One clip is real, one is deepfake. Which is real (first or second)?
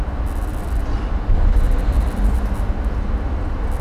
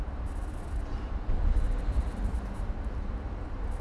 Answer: first